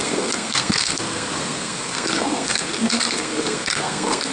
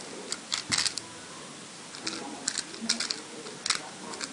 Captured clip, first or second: second